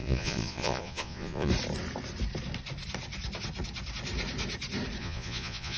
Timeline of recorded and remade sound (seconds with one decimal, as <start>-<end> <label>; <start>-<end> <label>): 0.0-1.5 remade; 1.5-5.0 recorded; 5.0-5.8 remade

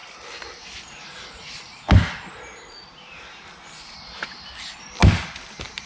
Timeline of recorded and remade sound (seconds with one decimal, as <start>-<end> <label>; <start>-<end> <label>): 0.0-5.9 recorded

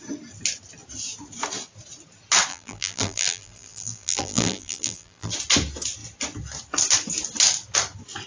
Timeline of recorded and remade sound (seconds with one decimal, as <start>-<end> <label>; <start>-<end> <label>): 0.0-2.5 recorded; 2.5-5.3 remade; 5.3-8.3 recorded

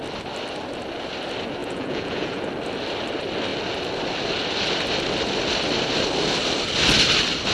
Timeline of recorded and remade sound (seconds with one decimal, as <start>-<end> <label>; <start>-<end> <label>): 0.0-1.6 recorded; 1.6-2.4 remade; 2.4-7.5 recorded

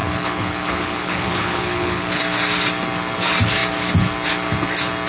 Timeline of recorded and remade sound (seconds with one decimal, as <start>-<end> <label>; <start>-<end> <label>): 0.0-2.2 remade; 2.2-5.1 recorded